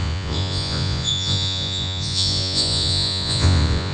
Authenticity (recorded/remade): remade